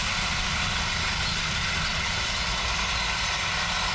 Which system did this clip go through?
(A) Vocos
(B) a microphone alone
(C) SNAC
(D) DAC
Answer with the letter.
B